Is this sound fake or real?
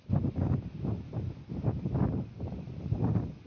real